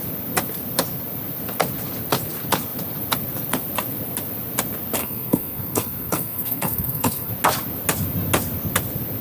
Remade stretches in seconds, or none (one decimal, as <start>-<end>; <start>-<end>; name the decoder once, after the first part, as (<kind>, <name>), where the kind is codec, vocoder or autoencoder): 5.0-7.3 (codec, SNAC)